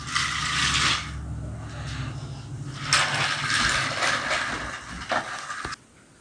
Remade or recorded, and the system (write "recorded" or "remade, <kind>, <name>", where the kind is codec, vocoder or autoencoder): recorded